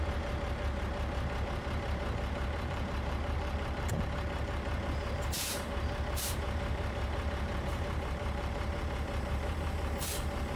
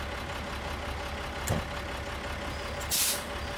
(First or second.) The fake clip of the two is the first